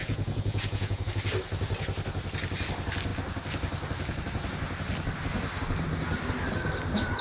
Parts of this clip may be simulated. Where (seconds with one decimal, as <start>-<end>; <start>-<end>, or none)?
0.0-1.0